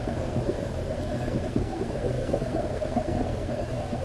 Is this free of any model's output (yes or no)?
no